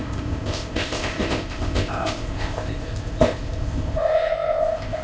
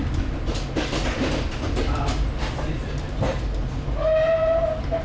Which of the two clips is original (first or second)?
second